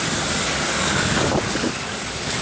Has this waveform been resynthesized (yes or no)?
yes